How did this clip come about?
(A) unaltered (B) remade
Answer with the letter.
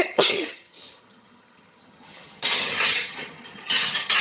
B